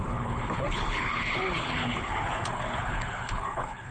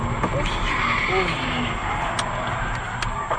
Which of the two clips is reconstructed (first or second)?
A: first